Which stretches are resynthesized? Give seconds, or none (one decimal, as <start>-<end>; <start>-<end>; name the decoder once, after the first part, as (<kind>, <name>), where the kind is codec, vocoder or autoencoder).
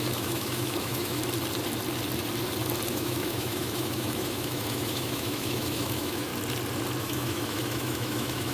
0.0-1.2 (autoencoder, DAC-VAE); 2.9-6.3; 7.0-8.5